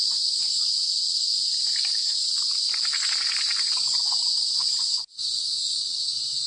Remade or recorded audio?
recorded